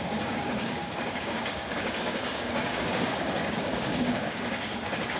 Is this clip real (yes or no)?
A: no